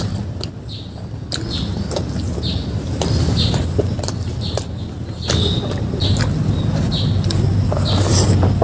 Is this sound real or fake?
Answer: real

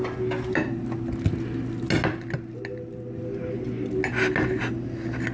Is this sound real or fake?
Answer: real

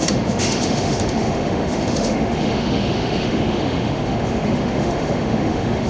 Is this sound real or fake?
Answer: fake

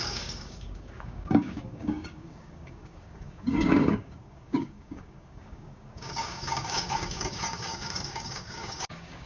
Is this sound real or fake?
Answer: fake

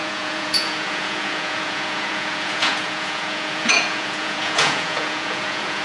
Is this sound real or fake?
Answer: fake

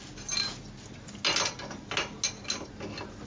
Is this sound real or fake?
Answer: real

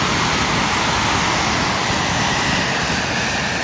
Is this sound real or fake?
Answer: real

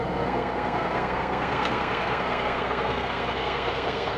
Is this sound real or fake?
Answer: fake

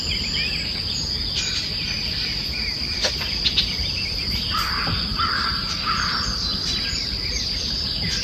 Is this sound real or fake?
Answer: real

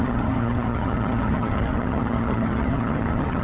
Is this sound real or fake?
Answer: fake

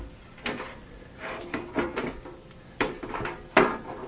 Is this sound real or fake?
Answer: fake